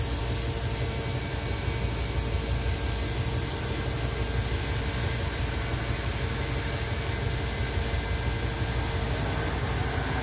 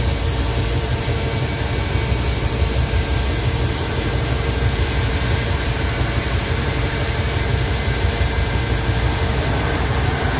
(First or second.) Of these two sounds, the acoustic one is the first